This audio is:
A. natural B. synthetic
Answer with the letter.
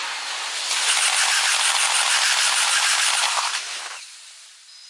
A